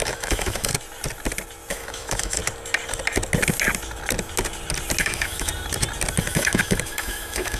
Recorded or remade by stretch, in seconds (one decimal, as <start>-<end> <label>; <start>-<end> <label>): 0.0-0.7 remade; 0.7-1.7 recorded; 1.7-2.4 remade; 2.4-5.0 recorded; 5.0-5.5 remade; 5.5-6.2 recorded; 6.2-7.6 remade